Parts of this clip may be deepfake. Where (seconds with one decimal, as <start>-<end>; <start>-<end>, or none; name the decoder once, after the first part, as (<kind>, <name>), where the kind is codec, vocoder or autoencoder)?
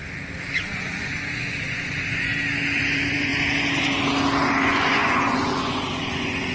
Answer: 0.6-2.3 (vocoder, Vocos); 2.8-3.3; 4.6-6.5